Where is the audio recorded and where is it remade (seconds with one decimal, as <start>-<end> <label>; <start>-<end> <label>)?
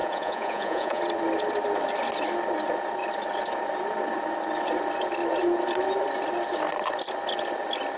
0.0-1.0 remade; 1.0-8.0 recorded